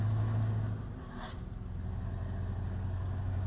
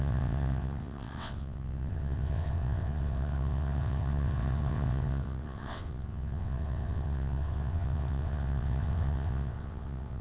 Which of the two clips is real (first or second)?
first